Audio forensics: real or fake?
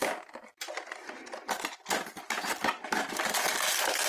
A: real